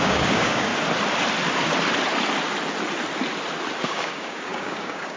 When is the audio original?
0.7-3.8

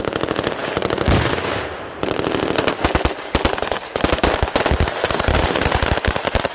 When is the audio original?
0.0-6.5

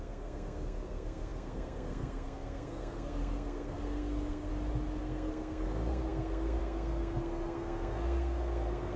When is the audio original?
4.5-5.0

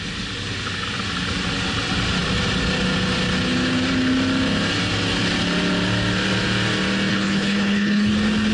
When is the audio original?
0.0-7.1; 8.1-8.5

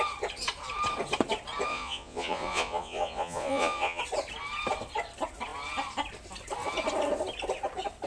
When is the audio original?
0.0-1.7; 4.0-8.1

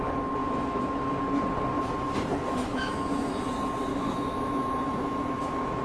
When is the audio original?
0.0-0.4; 1.2-2.7; 3.3-3.9